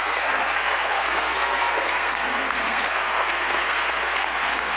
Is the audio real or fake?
fake